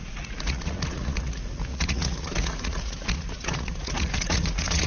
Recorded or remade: remade